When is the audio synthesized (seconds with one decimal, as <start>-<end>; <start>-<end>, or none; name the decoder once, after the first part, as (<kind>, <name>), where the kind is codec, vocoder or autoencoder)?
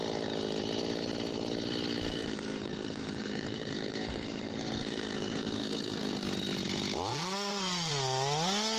2.1-6.3 (codec, SNAC); 7.1-7.9